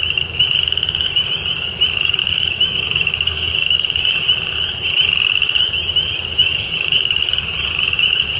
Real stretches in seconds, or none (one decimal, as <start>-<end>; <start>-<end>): 0.0-2.2; 4.0-6.3; 7.3-8.4